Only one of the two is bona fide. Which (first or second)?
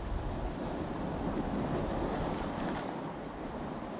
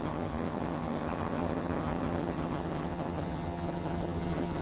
first